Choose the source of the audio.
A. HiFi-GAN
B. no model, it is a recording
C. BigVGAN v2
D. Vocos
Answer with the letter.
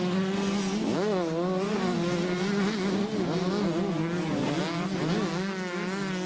B